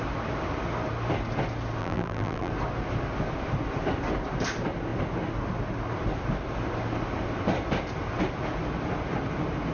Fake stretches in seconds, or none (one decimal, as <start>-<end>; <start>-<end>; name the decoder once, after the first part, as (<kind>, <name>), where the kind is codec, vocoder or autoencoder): 1.8-2.5 (vocoder, BigVGAN v2)

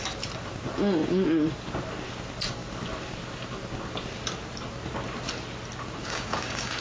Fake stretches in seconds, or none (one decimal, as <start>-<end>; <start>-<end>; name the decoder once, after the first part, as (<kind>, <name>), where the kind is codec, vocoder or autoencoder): 6.0-6.8 (codec, DAC)

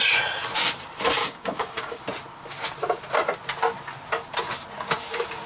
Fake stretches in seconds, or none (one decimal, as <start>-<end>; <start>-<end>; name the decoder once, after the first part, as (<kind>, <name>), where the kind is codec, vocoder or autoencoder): 1.2-2.0 (codec, DAC)

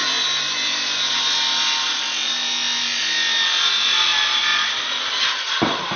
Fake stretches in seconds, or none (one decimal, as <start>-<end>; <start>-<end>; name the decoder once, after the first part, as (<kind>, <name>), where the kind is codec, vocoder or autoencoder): none

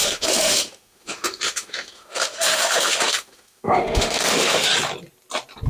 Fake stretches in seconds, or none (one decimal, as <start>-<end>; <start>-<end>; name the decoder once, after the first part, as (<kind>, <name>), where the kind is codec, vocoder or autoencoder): 0.0-4.7 (autoencoder, DAC-VAE)

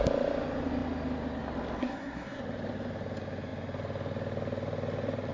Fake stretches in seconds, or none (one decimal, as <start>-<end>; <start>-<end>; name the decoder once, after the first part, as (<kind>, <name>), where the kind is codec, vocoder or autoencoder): 1.8-2.4 (codec, SNAC)

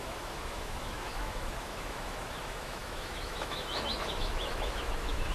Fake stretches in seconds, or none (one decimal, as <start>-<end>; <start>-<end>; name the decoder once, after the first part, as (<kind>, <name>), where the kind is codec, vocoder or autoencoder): 0.0-5.3 (autoencoder, DAC-VAE)

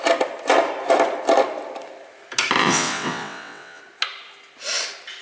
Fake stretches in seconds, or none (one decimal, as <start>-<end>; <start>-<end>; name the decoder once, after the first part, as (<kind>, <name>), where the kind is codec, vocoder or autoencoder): 2.6-3.8 (vocoder, WaveNeXt)